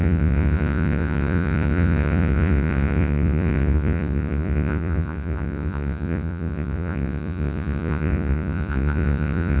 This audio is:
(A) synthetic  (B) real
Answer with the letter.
A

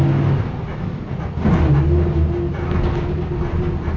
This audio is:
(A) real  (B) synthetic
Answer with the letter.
A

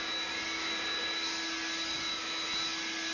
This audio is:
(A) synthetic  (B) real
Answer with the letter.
B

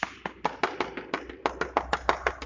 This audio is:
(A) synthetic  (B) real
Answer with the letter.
B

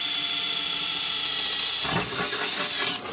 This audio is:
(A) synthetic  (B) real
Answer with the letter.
B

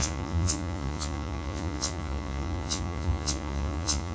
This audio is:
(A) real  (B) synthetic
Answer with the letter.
B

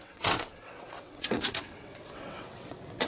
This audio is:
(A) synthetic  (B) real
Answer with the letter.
A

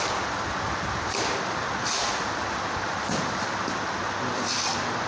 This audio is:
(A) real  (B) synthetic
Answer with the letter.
A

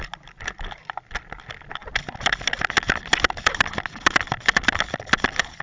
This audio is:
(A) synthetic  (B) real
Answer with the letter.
B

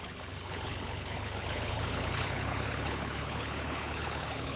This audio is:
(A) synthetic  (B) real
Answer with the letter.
A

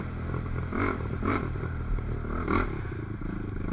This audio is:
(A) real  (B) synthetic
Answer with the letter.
B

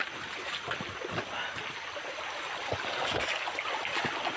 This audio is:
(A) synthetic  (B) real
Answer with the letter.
B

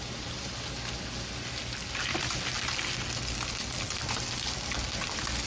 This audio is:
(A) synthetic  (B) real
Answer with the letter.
B